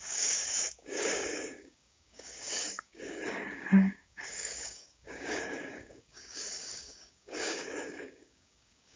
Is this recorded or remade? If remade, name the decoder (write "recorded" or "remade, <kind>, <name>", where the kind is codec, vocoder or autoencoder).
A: remade, codec, DAC